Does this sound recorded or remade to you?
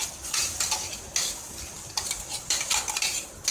recorded